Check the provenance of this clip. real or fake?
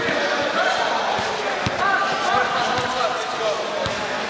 real